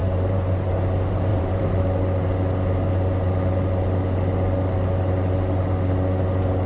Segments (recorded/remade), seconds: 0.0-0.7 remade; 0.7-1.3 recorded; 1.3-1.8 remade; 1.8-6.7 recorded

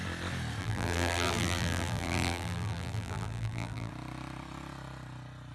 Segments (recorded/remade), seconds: 0.0-0.6 recorded; 0.6-3.9 remade; 3.9-5.5 recorded